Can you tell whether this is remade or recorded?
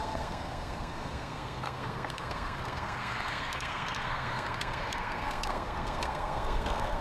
remade